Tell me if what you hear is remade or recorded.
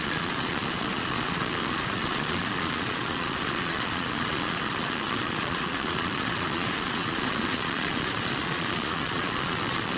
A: remade